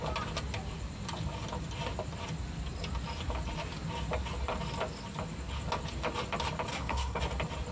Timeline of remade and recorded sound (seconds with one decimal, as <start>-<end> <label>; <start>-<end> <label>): 0.0-6.7 recorded; 6.7-7.2 remade; 7.2-7.7 recorded